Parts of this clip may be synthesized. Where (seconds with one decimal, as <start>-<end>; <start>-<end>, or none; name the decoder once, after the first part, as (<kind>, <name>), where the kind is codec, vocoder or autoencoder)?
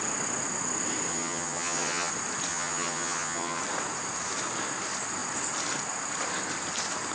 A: 1.1-2.1 (vocoder, HiFi-GAN); 2.5-3.6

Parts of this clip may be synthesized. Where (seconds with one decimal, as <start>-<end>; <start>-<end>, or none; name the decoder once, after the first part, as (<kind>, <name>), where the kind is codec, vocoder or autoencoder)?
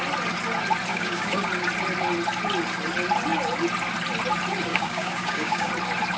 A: 0.9-1.5 (codec, DAC); 4.7-5.7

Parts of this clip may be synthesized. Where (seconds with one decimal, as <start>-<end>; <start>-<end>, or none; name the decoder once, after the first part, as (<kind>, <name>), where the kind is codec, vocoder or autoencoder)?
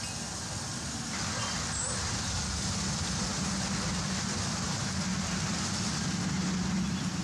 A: none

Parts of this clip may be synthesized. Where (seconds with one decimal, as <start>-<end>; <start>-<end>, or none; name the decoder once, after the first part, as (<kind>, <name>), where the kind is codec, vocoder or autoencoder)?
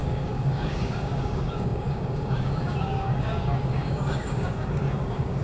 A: 0.0-5.4 (codec, DAC)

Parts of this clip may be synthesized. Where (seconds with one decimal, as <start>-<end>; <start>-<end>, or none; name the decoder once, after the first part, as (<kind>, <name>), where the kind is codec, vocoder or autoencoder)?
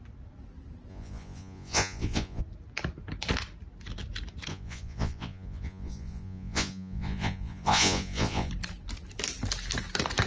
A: 0.9-2.4 (vocoder, Vocos); 4.5-8.5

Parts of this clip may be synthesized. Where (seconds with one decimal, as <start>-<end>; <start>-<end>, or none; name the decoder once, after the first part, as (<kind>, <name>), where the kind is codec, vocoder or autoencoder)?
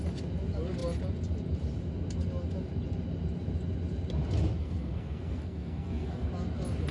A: 4.6-6.3 (codec, SNAC)